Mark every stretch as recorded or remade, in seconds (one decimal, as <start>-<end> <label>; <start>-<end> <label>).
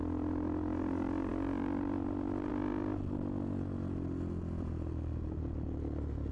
0.0-6.3 recorded